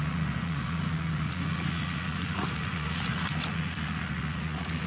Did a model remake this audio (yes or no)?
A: yes